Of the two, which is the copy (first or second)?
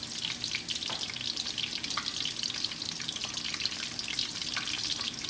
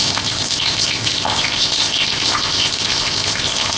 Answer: second